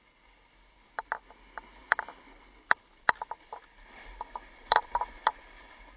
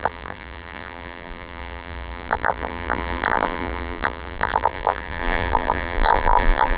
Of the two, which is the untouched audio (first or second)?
first